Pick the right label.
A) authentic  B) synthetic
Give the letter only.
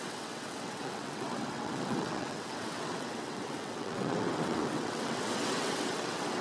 B